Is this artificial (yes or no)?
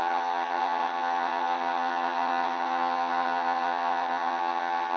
yes